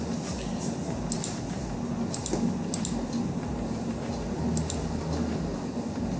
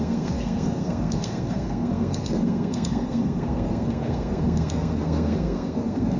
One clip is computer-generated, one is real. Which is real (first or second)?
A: first